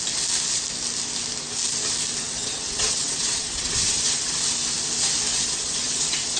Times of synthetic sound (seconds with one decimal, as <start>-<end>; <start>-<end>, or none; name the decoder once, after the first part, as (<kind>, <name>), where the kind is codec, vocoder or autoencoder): 2.2-4.4 (vocoder, WaveNeXt); 5.3-6.4